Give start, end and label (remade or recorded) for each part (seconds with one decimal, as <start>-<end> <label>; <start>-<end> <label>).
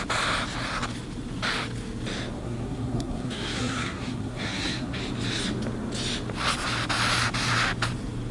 0.0-2.4 recorded; 2.4-5.0 remade; 5.0-8.3 recorded